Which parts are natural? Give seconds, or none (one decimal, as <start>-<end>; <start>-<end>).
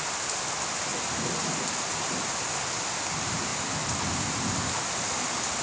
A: 0.0-5.6